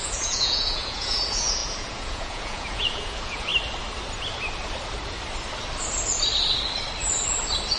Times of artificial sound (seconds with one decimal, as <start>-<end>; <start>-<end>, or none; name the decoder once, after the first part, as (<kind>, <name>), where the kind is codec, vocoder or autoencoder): 0.0-3.5 (vocoder, Vocos)